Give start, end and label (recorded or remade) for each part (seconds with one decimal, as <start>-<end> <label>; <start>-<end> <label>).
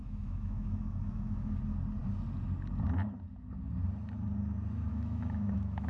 0.0-1.6 remade; 1.6-4.9 recorded; 4.9-5.9 remade